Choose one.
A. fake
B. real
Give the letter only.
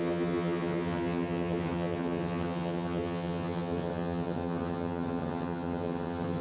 A